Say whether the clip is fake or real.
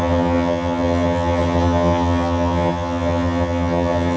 fake